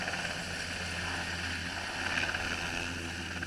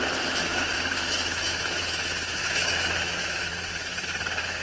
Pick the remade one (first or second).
second